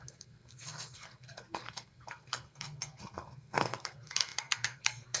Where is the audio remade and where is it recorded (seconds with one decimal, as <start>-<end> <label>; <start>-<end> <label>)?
0.0-5.2 remade

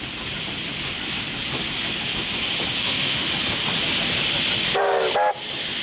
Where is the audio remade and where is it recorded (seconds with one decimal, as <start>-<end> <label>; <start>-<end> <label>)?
0.0-2.8 recorded; 2.8-3.3 remade; 3.3-5.8 recorded

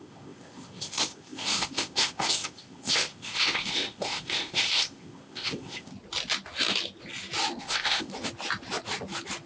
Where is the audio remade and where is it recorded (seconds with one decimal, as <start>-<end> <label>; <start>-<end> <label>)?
0.0-5.9 remade; 5.9-7.6 recorded; 7.6-8.1 remade; 8.1-9.5 recorded

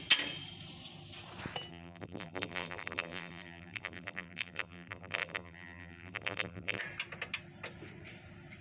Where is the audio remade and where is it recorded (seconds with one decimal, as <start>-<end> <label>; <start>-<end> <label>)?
0.0-1.7 recorded; 1.7-6.8 remade; 6.8-8.6 recorded